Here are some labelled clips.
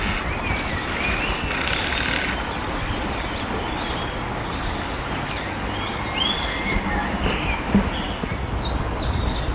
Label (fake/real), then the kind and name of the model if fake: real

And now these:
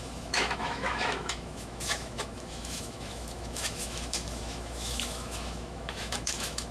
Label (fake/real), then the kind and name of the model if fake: fake, autoencoder, DAC-VAE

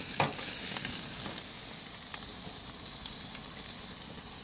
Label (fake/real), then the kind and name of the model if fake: real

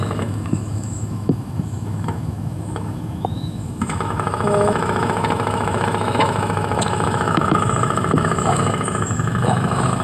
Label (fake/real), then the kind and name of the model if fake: fake, autoencoder, DAC-VAE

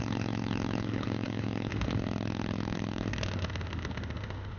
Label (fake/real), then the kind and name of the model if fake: fake, autoencoder, DAC-VAE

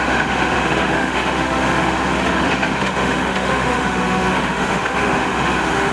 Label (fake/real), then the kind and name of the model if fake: fake, autoencoder, DAC-VAE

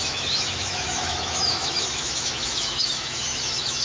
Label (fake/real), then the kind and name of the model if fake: fake, autoencoder, DAC-VAE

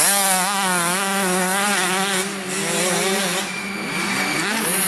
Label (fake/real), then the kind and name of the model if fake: real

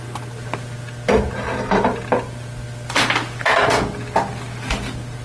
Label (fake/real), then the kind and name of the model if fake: real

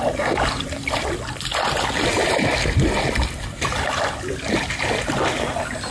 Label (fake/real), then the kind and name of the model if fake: real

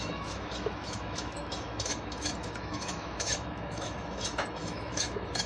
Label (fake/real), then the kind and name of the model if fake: fake, autoencoder, DAC-VAE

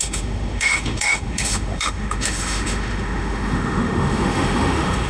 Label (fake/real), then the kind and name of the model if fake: fake, autoencoder, DAC-VAE